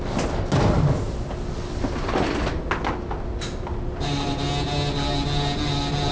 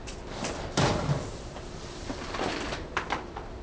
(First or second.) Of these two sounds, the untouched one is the first